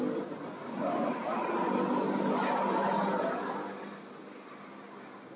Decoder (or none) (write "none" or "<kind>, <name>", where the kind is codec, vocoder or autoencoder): none